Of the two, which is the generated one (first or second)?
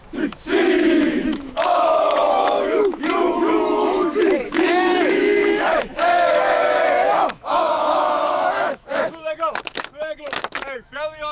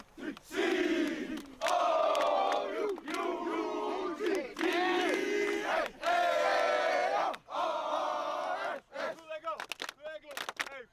first